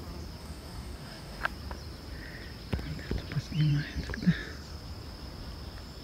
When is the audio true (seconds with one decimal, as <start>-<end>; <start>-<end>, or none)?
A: 0.0-0.4; 1.4-6.0